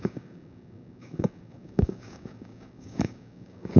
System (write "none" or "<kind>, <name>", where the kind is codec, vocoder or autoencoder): codec, DAC